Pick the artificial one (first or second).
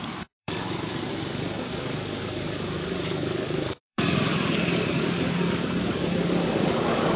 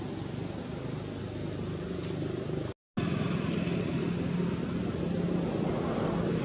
first